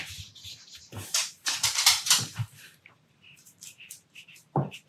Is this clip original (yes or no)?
no